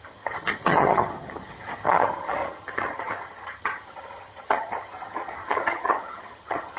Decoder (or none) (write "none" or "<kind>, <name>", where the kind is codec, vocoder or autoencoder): vocoder, HiFi-GAN